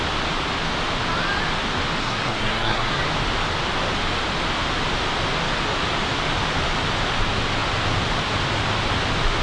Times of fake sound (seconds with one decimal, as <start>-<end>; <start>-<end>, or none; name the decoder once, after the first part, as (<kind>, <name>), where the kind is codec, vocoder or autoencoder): 2.0-2.9 (codec, SNAC)